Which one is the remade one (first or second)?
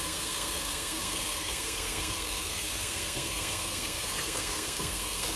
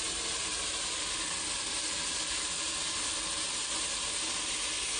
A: first